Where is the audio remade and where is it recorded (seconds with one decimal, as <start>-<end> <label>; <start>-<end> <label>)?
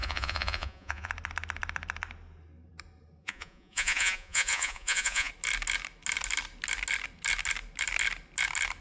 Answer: 0.0-1.1 remade; 1.1-3.2 recorded; 3.2-5.3 remade; 5.3-8.8 recorded